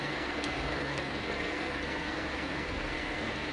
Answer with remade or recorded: remade